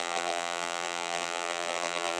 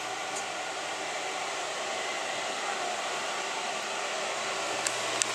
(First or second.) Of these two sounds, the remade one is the first